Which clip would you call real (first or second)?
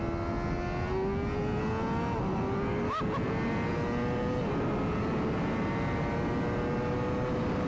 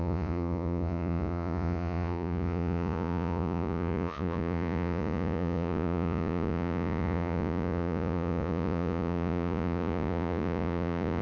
first